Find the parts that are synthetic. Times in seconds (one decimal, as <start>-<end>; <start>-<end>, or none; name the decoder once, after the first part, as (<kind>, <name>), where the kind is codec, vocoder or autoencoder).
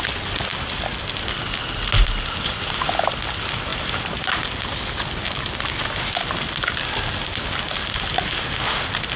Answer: none